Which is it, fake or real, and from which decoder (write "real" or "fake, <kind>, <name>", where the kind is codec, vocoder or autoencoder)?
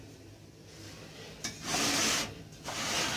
real